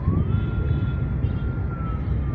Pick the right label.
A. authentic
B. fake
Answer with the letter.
A